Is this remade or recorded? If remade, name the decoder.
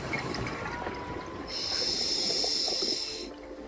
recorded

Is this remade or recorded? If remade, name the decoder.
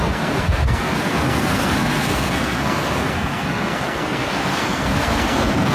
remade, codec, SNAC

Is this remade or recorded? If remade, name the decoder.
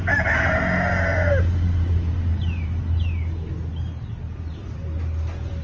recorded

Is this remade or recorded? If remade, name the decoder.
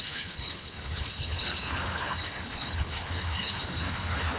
remade, codec, HILCodec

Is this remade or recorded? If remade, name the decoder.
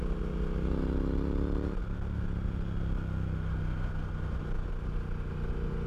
recorded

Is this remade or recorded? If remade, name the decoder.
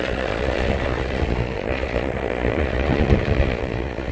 remade, vocoder, Vocos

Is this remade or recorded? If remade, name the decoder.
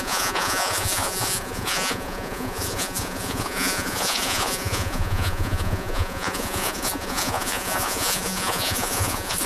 remade, vocoder, Vocos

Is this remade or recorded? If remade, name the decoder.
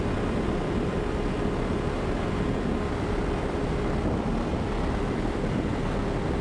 recorded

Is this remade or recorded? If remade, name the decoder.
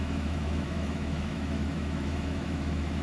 remade, autoencoder, DAC-VAE